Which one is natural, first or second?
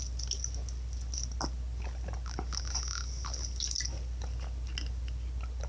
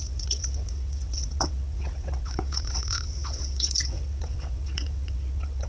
first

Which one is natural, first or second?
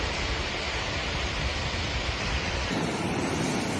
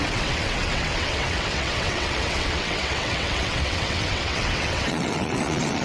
first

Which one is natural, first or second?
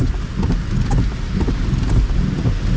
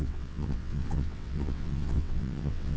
first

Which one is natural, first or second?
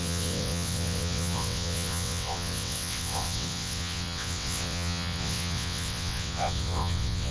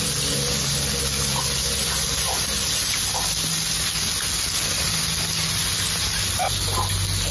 second